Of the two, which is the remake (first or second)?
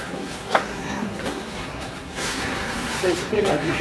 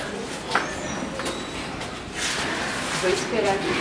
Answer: first